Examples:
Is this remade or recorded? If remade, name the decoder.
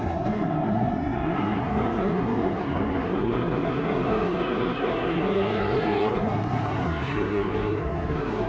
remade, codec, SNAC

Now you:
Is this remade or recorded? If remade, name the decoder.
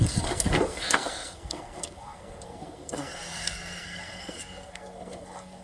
remade, codec, SNAC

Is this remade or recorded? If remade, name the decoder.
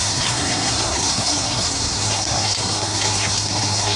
remade, codec, SNAC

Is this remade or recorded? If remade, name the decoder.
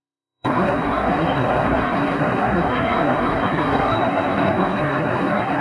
remade, codec, SNAC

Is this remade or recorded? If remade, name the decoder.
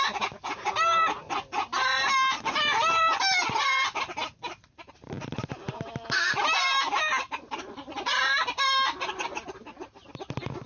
recorded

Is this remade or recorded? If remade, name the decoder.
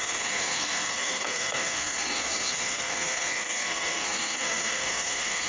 remade, codec, SNAC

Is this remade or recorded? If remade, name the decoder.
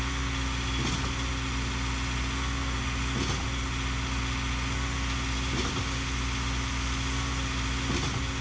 recorded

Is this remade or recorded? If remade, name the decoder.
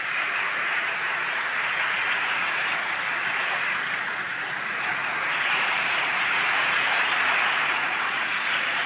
remade, vocoder, Vocos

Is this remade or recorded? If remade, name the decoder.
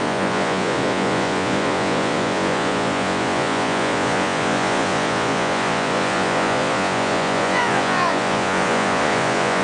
remade, vocoder, Vocos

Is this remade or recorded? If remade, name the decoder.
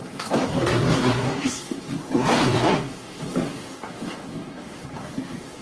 remade, codec, SNAC